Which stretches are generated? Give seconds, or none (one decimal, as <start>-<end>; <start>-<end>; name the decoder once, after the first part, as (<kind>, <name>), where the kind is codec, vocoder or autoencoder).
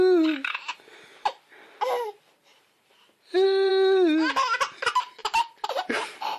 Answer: 2.5-3.7 (vocoder, BigVGAN v2); 5.2-6.4